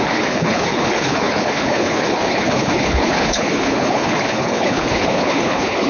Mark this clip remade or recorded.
remade